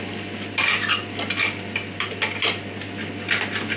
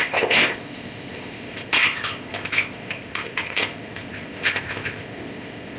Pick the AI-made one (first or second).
second